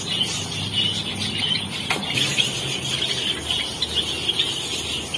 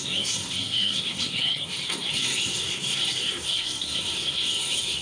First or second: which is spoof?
second